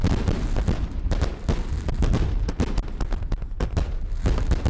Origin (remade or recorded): recorded